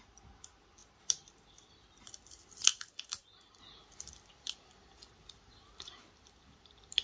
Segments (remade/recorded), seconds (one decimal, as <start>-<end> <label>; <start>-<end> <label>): 0.0-0.8 recorded; 0.8-2.3 remade; 2.3-7.0 recorded